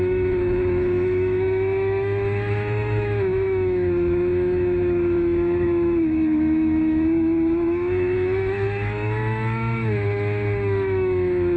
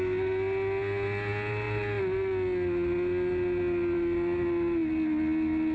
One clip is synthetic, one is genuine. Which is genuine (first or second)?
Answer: second